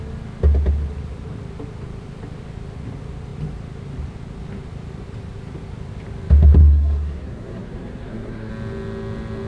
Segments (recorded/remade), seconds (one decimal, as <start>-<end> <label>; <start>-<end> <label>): 0.0-6.6 recorded; 6.6-8.5 remade; 8.5-9.5 recorded